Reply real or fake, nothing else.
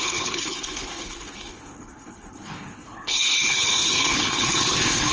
fake